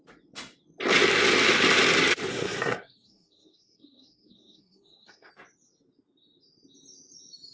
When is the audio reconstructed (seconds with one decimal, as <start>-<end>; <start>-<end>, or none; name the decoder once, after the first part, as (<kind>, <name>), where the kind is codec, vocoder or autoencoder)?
2.3-5.3 (codec, SNAC)